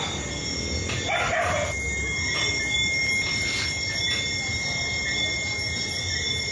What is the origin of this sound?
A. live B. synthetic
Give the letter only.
A